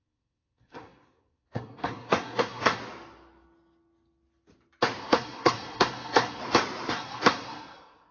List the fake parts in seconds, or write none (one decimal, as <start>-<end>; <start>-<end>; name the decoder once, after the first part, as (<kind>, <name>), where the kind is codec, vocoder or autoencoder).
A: 0.0-2.8 (codec, SNAC); 5.0-6.4; 6.9-8.1

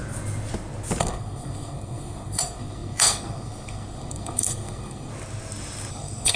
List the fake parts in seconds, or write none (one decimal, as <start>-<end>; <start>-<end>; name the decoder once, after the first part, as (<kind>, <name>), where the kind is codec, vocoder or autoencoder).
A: 1.0-5.1 (codec, SNAC); 5.9-6.4

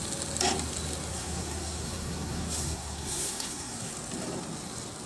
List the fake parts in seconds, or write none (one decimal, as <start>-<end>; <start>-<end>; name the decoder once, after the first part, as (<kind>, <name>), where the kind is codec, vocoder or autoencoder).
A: 1.1-3.9 (codec, SNAC)

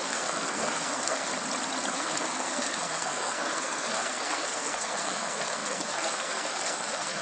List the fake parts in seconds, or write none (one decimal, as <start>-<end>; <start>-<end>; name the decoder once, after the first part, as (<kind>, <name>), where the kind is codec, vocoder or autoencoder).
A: 0.0-1.3 (codec, SNAC); 1.9-7.2

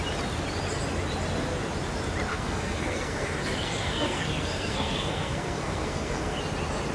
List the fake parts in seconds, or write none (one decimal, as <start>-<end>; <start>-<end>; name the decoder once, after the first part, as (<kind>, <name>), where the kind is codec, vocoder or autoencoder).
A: 2.3-6.4 (codec, SNAC)

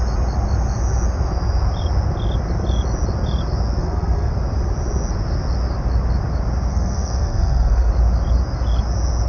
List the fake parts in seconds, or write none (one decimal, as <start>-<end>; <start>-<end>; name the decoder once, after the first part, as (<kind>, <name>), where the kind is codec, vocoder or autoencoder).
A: 3.8-4.3 (codec, SNAC); 6.7-7.9

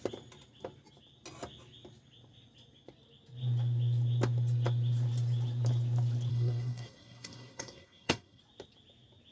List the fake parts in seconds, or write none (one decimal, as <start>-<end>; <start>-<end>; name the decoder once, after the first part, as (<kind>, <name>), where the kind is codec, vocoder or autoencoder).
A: 6.3-8.4 (codec, SNAC)

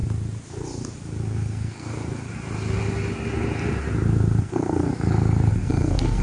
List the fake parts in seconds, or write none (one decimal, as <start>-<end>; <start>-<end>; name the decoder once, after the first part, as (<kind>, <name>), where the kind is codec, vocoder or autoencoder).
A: 1.2-1.9 (codec, SNAC); 4.4-4.9; 5.5-6.2